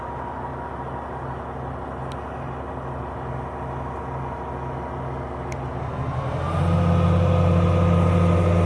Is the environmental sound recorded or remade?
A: recorded